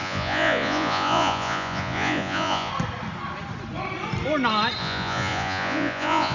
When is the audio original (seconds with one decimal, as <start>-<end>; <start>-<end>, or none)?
2.7-4.8